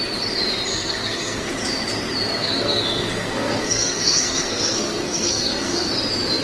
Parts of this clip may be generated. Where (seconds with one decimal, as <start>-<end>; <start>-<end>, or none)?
0.7-1.5; 2.4-5.9